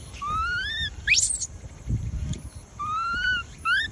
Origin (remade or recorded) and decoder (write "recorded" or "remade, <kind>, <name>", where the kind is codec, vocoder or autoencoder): remade, vocoder, BigVGAN v2